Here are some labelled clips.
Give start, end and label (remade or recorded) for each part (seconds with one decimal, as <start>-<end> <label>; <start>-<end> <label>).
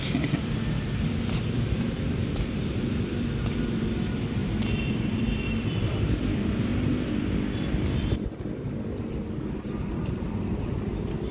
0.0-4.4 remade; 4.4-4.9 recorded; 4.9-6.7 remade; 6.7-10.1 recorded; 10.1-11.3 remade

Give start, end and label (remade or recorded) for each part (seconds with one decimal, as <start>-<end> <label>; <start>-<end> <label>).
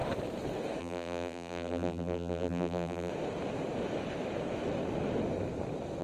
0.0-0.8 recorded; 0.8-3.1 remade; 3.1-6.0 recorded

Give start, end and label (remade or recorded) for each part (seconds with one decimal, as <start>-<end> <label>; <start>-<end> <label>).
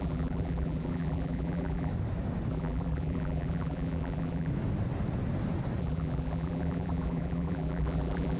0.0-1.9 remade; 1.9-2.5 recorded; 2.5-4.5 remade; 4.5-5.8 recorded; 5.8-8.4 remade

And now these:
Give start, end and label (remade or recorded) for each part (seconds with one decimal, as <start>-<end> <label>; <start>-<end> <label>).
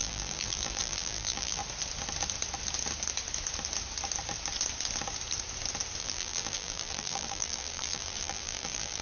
0.0-1.6 remade; 1.6-6.0 recorded; 6.0-9.0 remade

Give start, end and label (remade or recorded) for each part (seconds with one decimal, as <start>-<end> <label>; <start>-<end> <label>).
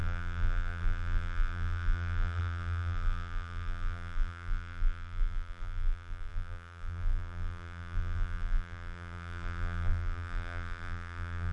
0.0-11.5 remade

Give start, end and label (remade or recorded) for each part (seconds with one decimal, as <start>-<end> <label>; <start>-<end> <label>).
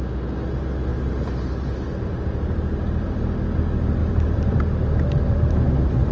0.0-0.9 recorded; 0.9-3.2 remade; 3.2-4.0 recorded; 4.0-4.6 remade; 4.6-6.1 recorded